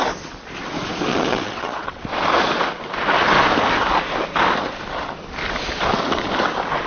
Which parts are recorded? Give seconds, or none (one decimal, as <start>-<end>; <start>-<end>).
0.0-1.1; 2.0-6.9